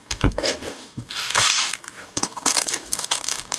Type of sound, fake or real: fake